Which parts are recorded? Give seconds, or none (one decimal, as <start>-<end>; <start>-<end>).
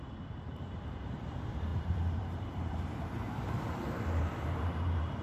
none